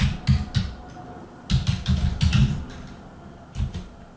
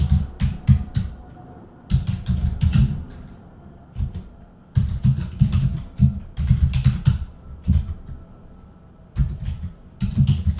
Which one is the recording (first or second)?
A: first